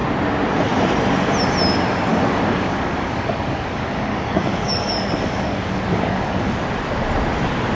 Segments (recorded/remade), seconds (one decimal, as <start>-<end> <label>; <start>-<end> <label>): 0.0-2.1 recorded; 2.1-6.5 remade; 6.5-7.7 recorded